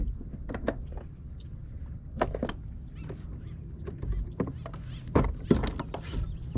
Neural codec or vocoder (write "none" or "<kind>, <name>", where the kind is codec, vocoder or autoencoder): none